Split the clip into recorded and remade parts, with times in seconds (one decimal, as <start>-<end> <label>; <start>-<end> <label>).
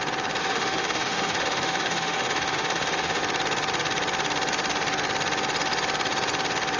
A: 0.0-0.4 recorded; 0.4-3.2 remade; 3.2-6.8 recorded